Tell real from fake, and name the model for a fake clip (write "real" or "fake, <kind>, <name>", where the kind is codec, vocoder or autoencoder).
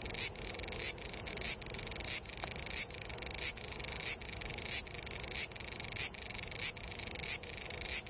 real